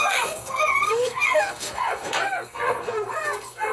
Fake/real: fake